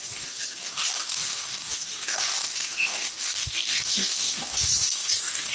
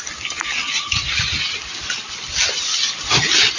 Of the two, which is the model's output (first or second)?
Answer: first